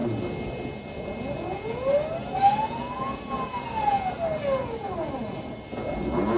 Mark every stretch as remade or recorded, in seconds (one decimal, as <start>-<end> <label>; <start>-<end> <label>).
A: 0.0-6.4 recorded